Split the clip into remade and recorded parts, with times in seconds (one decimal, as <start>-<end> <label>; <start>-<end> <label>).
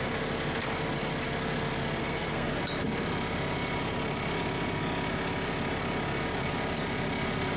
0.0-2.0 recorded; 2.0-2.6 remade; 2.6-7.6 recorded